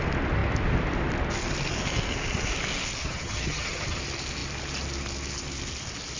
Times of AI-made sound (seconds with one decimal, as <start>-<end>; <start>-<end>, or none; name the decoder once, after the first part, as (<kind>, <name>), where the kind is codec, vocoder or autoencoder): 3.0-4.0 (vocoder, HiFi-GAN)

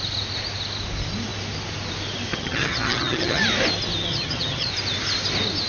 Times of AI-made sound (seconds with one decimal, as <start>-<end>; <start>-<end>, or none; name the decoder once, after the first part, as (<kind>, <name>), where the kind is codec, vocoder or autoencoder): 2.3-3.4 (vocoder, HiFi-GAN); 4.1-4.7

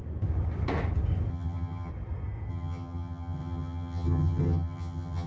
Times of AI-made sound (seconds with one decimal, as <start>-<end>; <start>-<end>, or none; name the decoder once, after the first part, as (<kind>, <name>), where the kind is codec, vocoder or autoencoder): 1.3-1.9 (vocoder, HiFi-GAN); 2.5-5.3

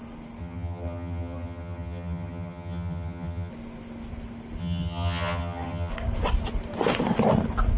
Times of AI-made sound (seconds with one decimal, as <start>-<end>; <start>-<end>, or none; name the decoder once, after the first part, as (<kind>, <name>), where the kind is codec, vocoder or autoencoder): 0.4-3.5 (vocoder, HiFi-GAN); 4.6-5.9

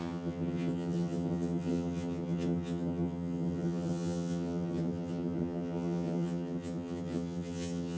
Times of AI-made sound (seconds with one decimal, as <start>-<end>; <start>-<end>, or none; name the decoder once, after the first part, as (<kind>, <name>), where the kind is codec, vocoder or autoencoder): 0.0-8.0 (vocoder, HiFi-GAN)